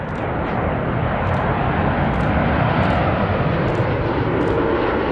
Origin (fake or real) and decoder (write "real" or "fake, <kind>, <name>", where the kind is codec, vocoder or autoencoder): real